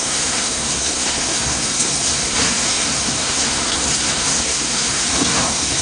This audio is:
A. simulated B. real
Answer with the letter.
A